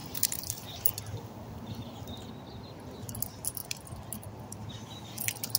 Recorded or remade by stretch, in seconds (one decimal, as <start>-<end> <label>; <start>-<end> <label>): 0.0-2.3 remade; 2.3-5.6 recorded